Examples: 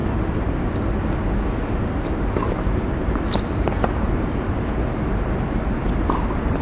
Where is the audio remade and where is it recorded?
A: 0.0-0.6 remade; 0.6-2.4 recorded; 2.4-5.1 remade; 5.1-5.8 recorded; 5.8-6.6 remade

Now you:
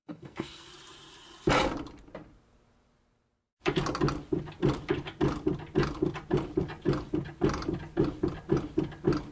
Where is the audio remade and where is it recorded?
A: 0.0-0.7 remade; 0.7-9.3 recorded

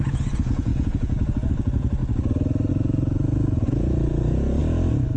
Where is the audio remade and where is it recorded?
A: 0.0-2.0 remade; 2.0-2.7 recorded; 2.7-4.6 remade; 4.6-5.2 recorded

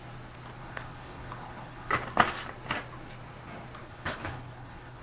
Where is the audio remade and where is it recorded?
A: 0.0-0.6 recorded; 0.6-1.9 remade; 1.9-3.8 recorded; 3.8-5.0 remade

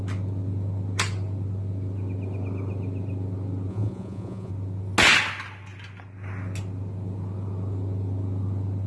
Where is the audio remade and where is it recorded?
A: 0.0-3.7 recorded; 3.7-4.5 remade; 4.5-8.9 recorded